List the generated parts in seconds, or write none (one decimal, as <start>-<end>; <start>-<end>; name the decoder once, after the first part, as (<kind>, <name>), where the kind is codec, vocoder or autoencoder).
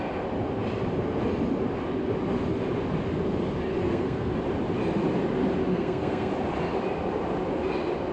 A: 3.8-4.3 (codec, SNAC); 5.7-6.3